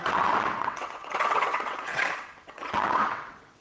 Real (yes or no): no